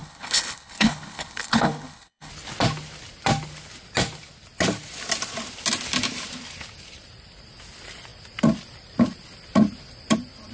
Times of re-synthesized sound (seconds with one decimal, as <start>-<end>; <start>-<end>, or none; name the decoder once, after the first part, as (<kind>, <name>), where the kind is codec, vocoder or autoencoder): 0.0-2.3 (codec, HILCodec)

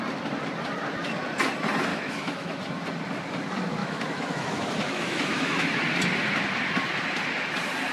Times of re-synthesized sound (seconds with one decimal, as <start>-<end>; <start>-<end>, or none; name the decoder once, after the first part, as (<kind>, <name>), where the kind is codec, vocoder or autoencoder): 1.9-2.6 (autoencoder, DAC-VAE); 3.8-5.7

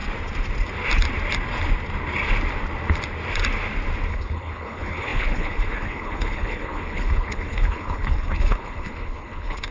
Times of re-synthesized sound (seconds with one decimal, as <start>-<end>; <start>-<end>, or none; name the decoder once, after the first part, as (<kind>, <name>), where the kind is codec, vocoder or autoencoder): 4.1-9.7 (codec, HILCodec)